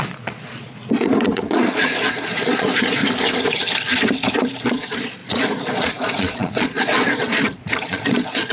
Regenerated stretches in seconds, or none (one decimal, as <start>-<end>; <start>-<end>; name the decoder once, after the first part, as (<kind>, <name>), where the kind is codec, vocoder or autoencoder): 0.0-3.0 (vocoder, Vocos); 4.6-8.5